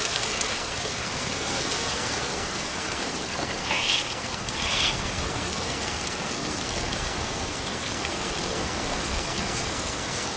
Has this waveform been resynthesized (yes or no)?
yes